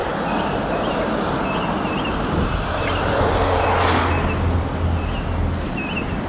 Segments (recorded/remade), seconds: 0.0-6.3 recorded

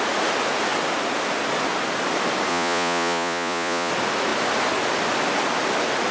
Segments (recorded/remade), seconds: 0.0-2.5 recorded; 2.5-3.9 remade; 3.9-6.1 recorded

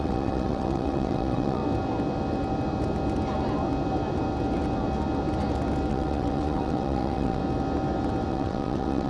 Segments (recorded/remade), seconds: 0.0-1.6 remade; 1.6-5.9 recorded; 5.9-7.4 remade; 7.4-8.3 recorded; 8.3-9.1 remade

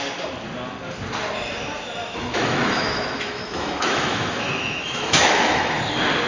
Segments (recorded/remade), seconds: 0.0-2.0 recorded; 2.0-5.8 remade; 5.8-6.3 recorded

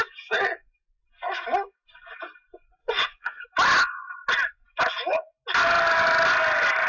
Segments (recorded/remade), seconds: 0.0-2.8 recorded; 2.8-3.4 remade; 3.4-6.9 recorded